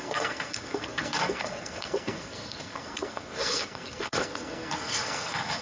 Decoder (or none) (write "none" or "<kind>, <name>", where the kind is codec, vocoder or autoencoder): codec, SNAC